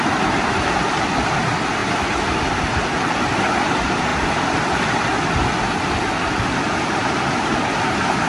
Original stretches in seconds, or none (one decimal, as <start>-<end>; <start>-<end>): 0.0-4.1; 5.1-8.3

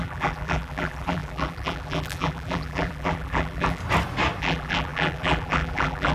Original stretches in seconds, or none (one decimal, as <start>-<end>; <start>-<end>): 3.8-4.4